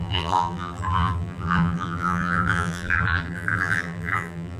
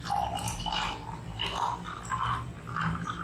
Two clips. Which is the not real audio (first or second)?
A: first